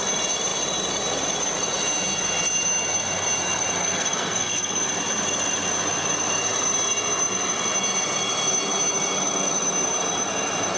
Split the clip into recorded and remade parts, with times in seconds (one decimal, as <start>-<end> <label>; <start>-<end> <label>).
0.0-3.8 recorded; 3.8-4.8 remade; 4.8-10.8 recorded